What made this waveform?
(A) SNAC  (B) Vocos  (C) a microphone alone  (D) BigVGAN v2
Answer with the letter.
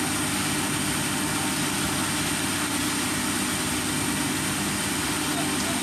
C